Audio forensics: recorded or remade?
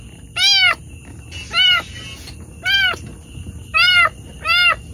recorded